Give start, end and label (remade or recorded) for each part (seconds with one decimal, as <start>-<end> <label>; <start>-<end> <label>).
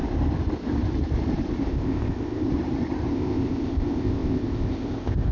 0.0-1.7 recorded; 1.7-2.5 remade; 2.5-3.1 recorded; 3.1-5.3 remade